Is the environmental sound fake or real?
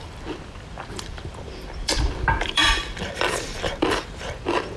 fake